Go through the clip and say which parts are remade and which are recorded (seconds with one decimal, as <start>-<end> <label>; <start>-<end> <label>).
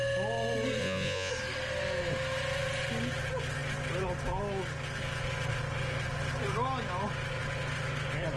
0.0-0.8 recorded; 0.8-1.3 remade; 1.3-8.4 recorded